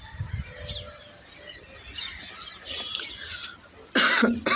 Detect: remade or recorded recorded